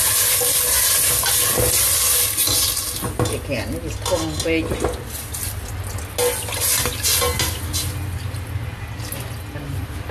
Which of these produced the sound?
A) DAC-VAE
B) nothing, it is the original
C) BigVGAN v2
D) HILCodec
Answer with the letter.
B